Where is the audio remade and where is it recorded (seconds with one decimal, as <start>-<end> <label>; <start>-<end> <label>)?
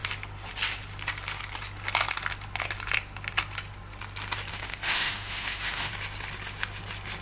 0.0-4.5 recorded; 4.5-5.9 remade; 5.9-7.2 recorded